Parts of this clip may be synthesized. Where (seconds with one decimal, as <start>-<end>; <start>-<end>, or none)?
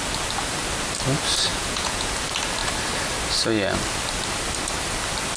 1.5-2.1